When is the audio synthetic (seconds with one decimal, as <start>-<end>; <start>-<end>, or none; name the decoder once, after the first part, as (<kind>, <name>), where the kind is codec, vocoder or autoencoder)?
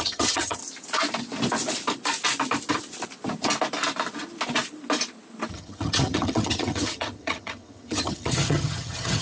0.0-0.6 (vocoder, HiFi-GAN); 5.5-9.2